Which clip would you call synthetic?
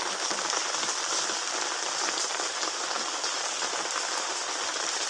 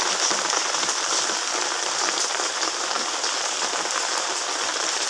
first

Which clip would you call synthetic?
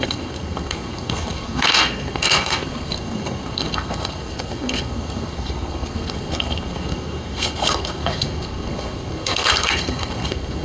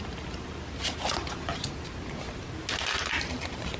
first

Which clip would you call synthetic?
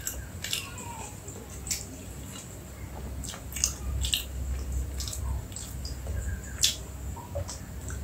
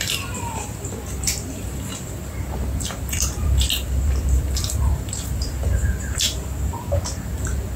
second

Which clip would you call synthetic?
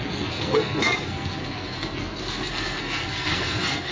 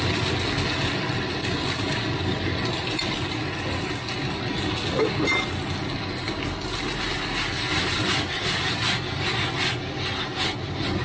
first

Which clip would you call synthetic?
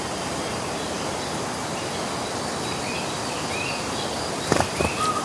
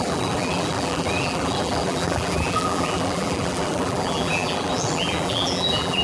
second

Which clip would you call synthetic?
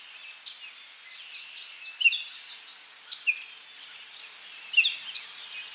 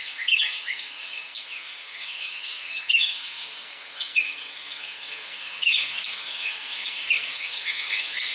second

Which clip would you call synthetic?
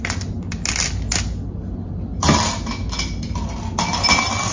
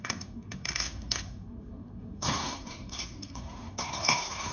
second